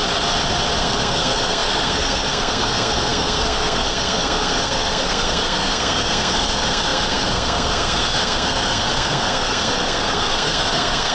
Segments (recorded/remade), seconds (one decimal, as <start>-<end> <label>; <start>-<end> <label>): 0.0-0.8 recorded; 0.8-11.1 remade